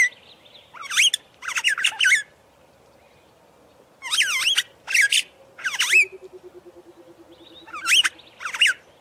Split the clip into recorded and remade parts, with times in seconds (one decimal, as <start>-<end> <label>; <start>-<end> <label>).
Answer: 0.0-9.0 recorded